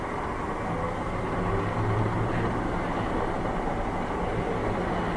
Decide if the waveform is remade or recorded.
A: recorded